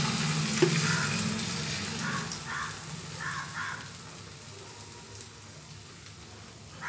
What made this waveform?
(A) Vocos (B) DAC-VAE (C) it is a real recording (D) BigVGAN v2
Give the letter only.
C